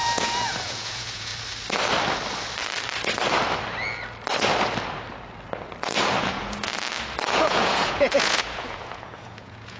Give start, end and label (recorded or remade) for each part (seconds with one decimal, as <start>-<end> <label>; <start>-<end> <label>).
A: 0.0-1.3 remade; 1.3-6.2 recorded; 6.2-6.7 remade; 6.7-7.3 recorded; 7.3-9.8 remade